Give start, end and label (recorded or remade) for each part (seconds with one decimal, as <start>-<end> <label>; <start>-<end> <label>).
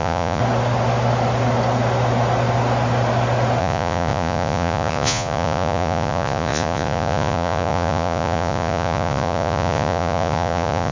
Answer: 0.0-0.4 remade; 0.4-3.6 recorded; 3.6-10.9 remade